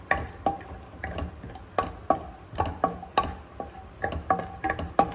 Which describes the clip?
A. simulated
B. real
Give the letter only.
B